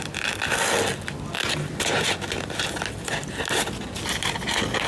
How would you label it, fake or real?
real